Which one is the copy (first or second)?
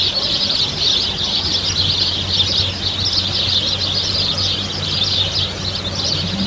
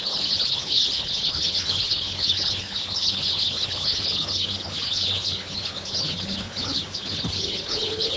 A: second